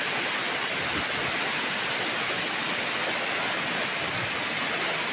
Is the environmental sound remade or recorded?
recorded